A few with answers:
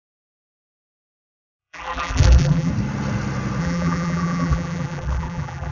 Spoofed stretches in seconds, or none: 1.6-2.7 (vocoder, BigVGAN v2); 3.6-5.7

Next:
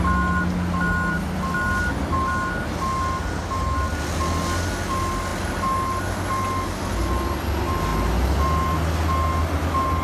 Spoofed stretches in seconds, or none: none